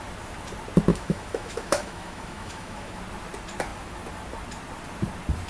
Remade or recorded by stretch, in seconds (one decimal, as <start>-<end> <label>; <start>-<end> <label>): 0.0-0.9 recorded; 0.9-3.0 remade; 3.0-5.5 recorded